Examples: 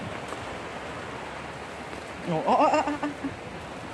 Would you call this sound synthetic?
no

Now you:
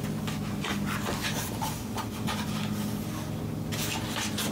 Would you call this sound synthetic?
no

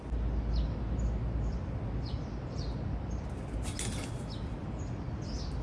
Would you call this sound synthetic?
no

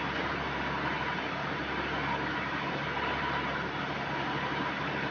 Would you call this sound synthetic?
no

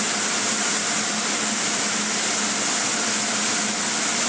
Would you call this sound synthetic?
no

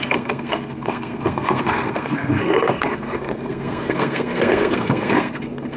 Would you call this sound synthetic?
yes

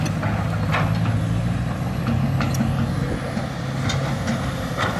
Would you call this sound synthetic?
no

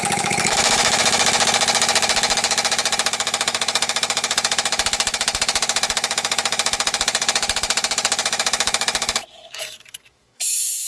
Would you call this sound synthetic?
yes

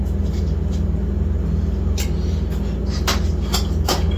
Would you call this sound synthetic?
no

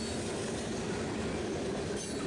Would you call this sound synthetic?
no